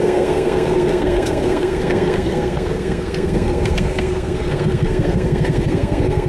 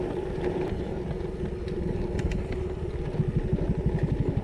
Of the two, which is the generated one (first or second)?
first